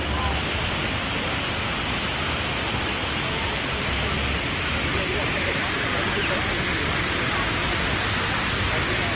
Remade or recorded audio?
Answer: recorded